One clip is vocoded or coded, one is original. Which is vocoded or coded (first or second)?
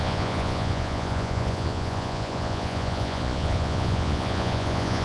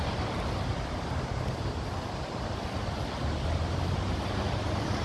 first